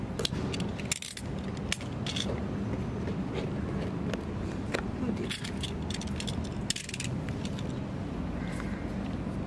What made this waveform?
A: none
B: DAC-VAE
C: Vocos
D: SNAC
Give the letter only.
A